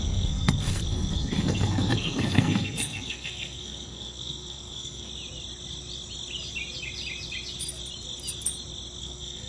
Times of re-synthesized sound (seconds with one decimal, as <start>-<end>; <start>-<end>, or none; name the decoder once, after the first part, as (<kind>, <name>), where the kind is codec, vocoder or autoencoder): 0.0-5.1 (codec, SNAC); 9.0-9.5